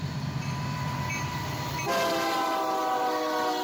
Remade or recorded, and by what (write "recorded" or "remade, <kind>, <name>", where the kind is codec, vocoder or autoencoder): recorded